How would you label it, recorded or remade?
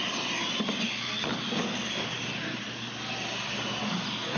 recorded